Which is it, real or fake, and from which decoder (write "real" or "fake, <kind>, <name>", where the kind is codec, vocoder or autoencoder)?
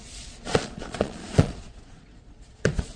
fake, vocoder, Vocos